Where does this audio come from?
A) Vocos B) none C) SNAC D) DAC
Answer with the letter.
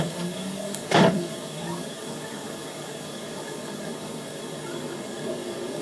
D